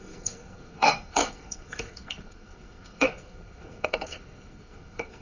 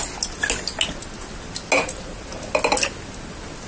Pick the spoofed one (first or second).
first